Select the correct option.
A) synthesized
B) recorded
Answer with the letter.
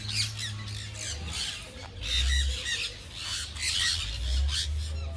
B